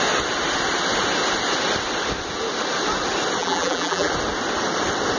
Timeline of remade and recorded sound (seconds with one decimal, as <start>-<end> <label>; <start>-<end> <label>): 0.0-3.4 recorded; 3.4-4.1 remade; 4.1-5.2 recorded

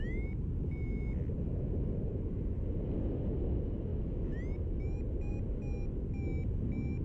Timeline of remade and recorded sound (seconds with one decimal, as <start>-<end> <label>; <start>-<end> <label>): 0.0-7.0 recorded

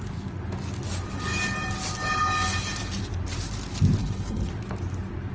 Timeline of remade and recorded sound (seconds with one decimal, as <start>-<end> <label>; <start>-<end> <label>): 0.0-4.0 recorded; 4.0-4.5 remade; 4.5-5.3 recorded

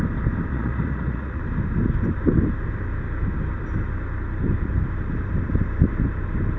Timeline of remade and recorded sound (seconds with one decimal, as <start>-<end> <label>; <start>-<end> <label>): 0.0-0.5 recorded; 0.5-1.4 remade; 1.4-6.6 recorded

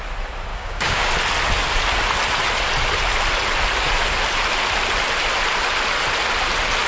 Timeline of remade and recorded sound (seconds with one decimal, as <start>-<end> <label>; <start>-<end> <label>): 0.0-0.5 recorded; 0.5-1.1 remade; 1.1-6.9 recorded

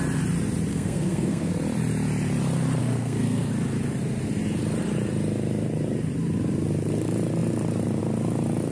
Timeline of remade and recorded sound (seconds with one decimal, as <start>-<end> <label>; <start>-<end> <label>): 0.0-0.7 recorded; 0.7-1.5 remade; 1.5-2.8 recorded; 2.8-3.5 remade; 3.5-8.7 recorded